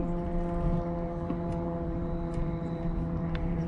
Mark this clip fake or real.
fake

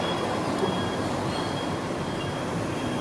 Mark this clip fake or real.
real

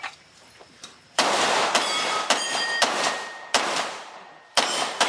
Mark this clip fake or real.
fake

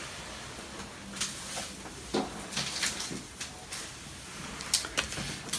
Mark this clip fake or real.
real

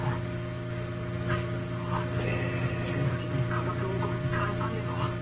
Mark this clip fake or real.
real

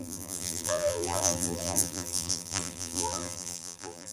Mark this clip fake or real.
fake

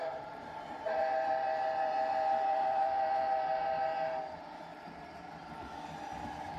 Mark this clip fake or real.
fake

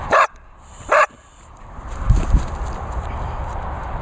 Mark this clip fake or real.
fake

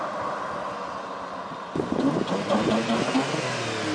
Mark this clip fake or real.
real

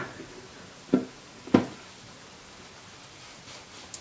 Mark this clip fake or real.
real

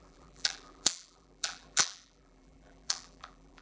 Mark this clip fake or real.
fake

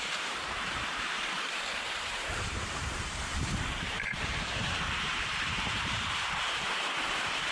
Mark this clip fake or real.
fake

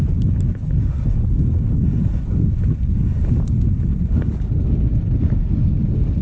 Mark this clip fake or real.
real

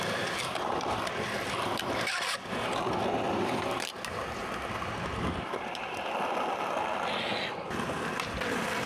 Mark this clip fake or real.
real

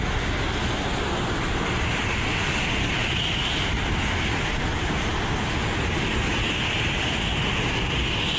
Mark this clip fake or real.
real